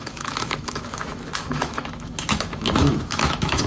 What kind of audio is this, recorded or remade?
remade